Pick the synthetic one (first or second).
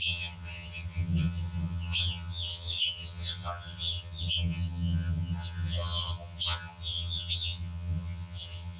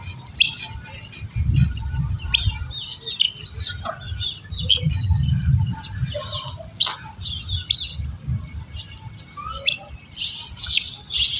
first